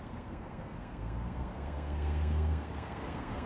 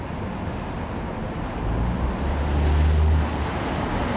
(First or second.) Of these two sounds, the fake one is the first